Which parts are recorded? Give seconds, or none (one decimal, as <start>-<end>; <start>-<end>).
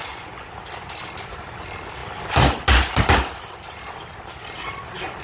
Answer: 0.5-5.2